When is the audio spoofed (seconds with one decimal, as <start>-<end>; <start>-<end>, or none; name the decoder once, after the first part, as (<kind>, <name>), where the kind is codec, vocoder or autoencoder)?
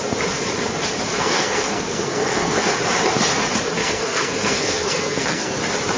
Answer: 1.1-2.7 (codec, SNAC); 3.8-5.6